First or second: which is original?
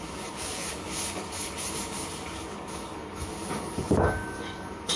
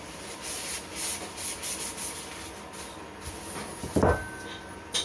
second